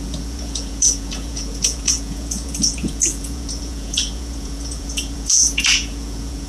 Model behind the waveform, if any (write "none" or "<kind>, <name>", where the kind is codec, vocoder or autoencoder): vocoder, Vocos